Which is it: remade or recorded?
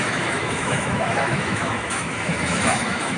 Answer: remade